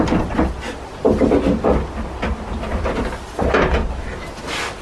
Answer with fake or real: real